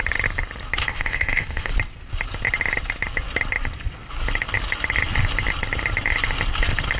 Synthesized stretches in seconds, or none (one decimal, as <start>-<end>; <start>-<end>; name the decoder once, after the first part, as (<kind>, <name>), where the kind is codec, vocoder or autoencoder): 0.8-1.7 (codec, ZipCodec)